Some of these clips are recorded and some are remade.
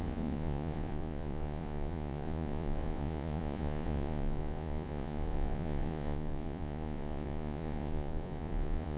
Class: remade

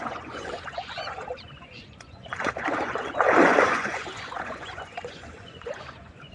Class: remade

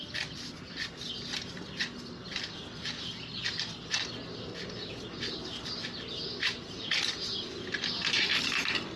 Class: recorded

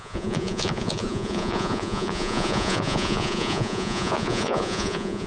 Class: remade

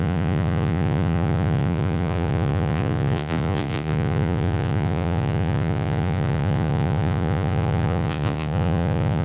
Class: remade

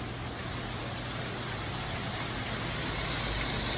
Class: recorded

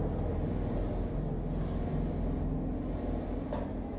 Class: recorded